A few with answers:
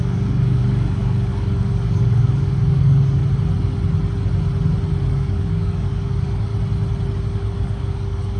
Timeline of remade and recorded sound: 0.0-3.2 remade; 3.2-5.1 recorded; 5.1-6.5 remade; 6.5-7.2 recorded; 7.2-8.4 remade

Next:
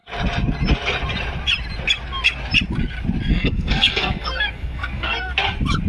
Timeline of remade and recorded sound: 0.0-3.3 recorded; 3.3-5.3 remade; 5.3-5.9 recorded

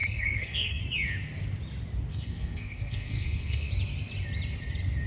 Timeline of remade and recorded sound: 0.0-0.8 remade; 0.8-2.1 recorded; 2.1-3.7 remade; 3.7-5.1 recorded

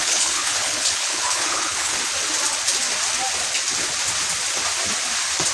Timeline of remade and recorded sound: 0.0-2.0 remade; 2.0-5.5 recorded